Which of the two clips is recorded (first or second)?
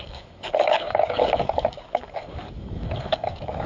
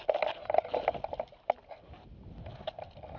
second